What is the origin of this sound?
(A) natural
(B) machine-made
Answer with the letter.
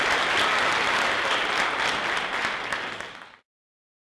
A